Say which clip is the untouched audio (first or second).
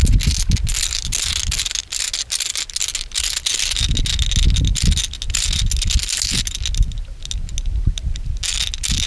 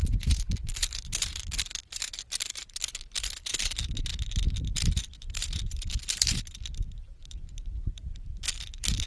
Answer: first